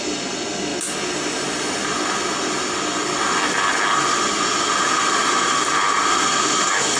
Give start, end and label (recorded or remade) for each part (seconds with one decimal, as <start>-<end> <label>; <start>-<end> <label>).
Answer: 0.0-7.0 recorded